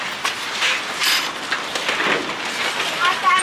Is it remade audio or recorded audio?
recorded